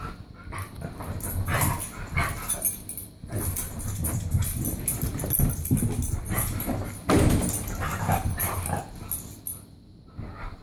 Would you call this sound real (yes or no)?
yes